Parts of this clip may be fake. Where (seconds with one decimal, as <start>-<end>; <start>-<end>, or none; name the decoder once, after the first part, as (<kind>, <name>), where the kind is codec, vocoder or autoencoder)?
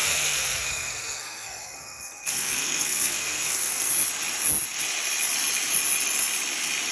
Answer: 0.0-3.9 (codec, SNAC)